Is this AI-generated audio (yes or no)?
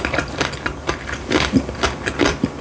yes